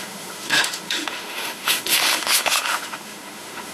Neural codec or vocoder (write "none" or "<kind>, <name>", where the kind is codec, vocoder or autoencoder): autoencoder, DAC-VAE